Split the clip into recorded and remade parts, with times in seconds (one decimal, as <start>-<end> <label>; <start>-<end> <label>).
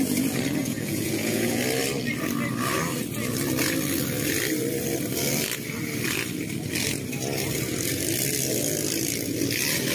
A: 0.0-0.6 recorded; 0.6-1.6 remade; 1.6-9.9 recorded